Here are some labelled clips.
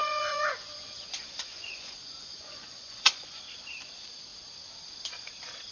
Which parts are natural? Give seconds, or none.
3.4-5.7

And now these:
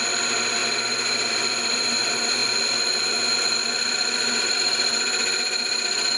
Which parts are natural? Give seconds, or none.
0.0-6.2